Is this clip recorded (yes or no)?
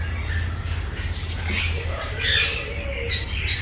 yes